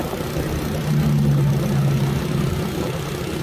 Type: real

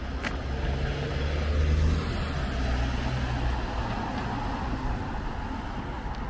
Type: real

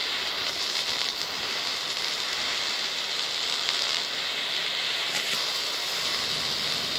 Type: fake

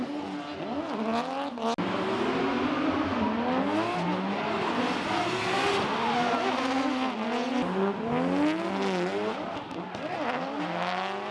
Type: real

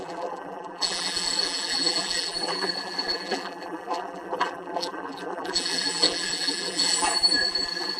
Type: fake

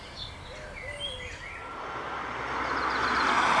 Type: real